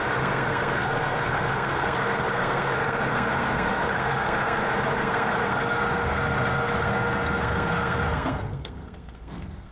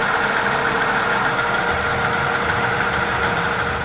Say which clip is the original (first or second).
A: second